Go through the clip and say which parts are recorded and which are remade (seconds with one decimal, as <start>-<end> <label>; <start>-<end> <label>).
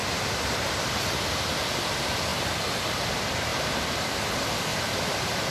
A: 0.0-1.4 recorded; 1.4-2.3 remade; 2.3-3.1 recorded; 3.1-5.5 remade